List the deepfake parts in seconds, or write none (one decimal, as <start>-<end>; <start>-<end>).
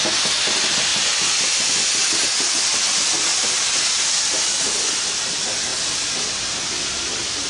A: none